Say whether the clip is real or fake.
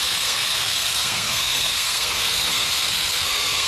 fake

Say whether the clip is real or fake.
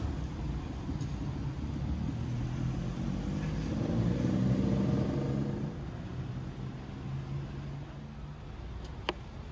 real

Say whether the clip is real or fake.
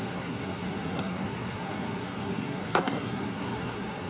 fake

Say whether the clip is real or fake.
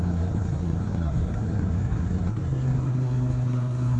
fake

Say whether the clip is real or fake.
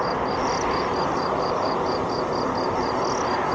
real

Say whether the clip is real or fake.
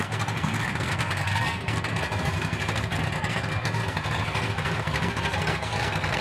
fake